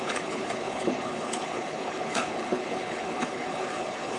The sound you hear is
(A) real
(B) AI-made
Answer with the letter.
B